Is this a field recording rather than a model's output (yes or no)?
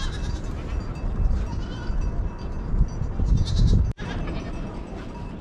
yes